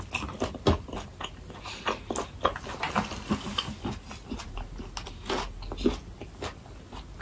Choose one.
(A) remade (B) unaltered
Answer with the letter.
B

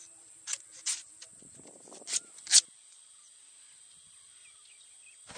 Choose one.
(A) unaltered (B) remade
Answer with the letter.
A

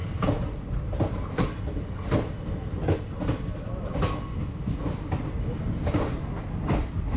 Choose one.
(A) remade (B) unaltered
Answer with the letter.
B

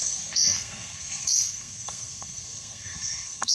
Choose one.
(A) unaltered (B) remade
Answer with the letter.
B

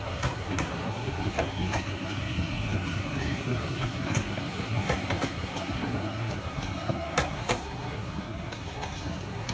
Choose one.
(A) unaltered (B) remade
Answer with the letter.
B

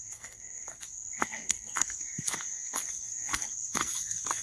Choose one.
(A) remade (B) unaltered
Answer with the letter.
A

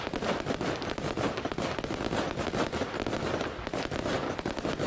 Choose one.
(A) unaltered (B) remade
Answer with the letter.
A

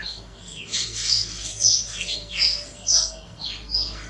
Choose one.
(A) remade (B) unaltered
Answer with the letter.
A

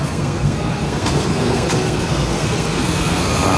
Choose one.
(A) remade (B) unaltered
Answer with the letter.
A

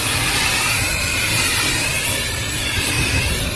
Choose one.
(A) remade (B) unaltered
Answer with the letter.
B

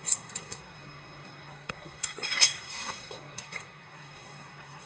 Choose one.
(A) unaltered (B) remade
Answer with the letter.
B